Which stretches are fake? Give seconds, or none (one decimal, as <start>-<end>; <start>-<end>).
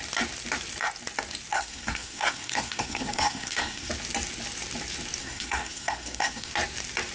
1.5-3.9; 5.2-6.5